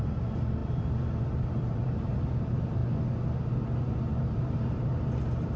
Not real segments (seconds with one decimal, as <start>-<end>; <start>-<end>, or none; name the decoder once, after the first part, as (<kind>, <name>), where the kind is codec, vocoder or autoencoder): 0.0-2.8 (vocoder, BigVGAN v2); 4.2-5.6

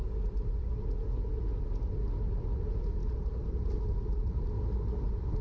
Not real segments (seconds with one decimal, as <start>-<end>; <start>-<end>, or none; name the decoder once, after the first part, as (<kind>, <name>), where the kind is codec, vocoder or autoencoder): 3.0-4.5 (vocoder, BigVGAN v2)

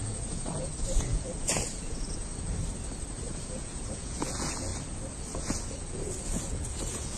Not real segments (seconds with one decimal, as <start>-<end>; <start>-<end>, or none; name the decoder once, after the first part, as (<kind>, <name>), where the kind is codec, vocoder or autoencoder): 0.0-2.3 (vocoder, Vocos); 3.4-4.7; 5.3-7.2

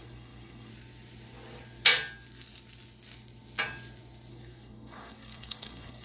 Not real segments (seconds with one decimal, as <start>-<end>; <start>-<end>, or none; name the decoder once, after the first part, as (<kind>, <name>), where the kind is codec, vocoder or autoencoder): 0.0-0.7 (codec, SNAC); 4.3-6.0

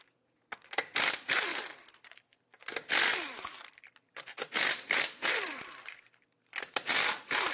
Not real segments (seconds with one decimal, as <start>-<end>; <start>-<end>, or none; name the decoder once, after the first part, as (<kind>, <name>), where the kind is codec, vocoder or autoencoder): 1.5-2.4 (vocoder, BigVGAN v2); 3.1-7.5